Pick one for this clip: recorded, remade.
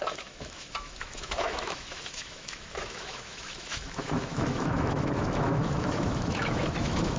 remade